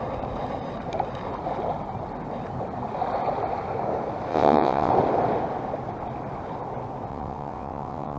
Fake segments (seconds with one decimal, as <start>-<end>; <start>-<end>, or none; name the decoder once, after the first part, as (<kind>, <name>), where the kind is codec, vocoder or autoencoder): 4.3-4.9 (vocoder, WaveNeXt); 7.1-8.2